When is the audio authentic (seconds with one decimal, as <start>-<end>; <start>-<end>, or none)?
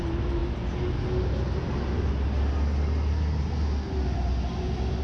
0.0-5.0